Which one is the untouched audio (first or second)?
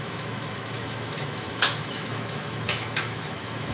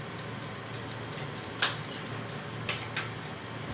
second